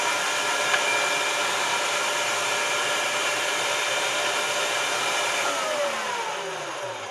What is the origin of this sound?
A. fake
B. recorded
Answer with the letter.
B